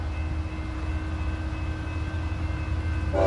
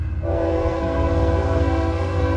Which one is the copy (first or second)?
second